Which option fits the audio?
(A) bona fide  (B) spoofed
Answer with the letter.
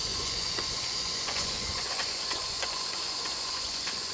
B